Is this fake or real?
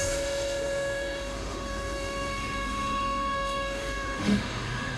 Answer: fake